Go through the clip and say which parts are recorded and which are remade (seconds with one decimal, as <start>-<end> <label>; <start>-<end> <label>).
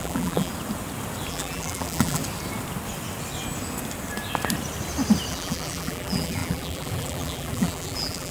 0.0-0.5 remade; 0.5-1.3 recorded; 1.3-2.2 remade; 2.2-5.3 recorded; 5.3-8.3 remade